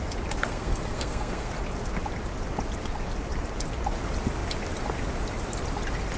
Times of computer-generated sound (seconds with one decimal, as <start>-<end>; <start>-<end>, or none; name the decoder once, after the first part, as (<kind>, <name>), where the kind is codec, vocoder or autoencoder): 0.5-1.5 (codec, SNAC)